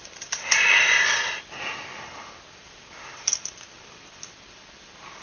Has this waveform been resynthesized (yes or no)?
no